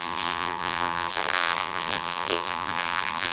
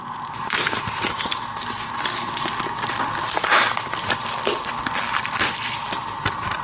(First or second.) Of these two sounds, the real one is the second